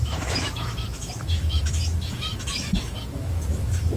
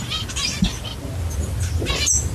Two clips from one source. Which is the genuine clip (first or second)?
second